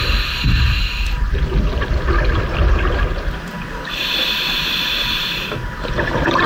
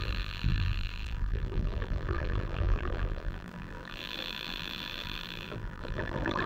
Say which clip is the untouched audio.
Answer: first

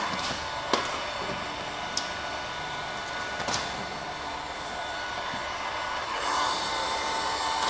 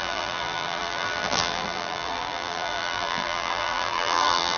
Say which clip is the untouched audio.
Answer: first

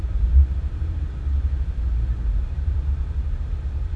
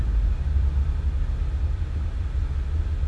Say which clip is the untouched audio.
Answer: second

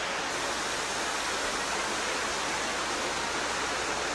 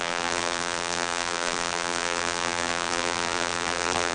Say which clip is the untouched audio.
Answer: first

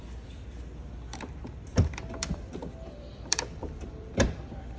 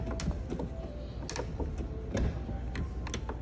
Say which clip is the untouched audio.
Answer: second